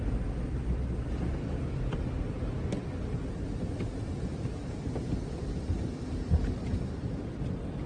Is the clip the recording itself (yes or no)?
yes